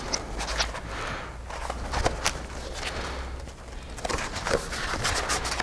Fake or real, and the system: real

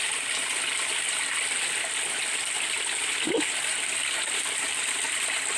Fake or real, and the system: real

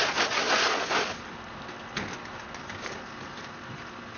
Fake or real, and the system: real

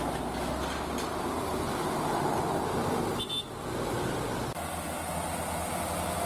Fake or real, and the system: real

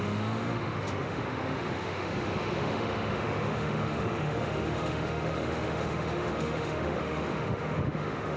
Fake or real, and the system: fake, autoencoder, DAC-VAE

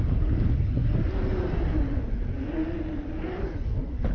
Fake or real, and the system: real